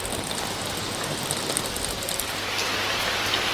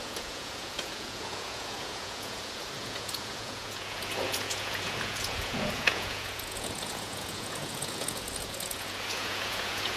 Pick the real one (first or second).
first